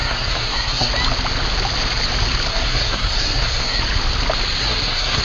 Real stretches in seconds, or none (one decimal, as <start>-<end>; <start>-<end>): 0.9-2.5; 3.8-4.6